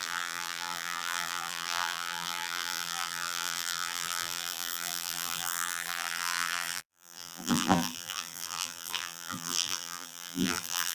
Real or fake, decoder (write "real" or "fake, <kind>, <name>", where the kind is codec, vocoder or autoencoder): fake, vocoder, BigVGAN v2